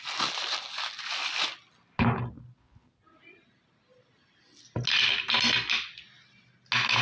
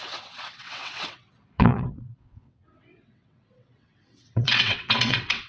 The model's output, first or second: second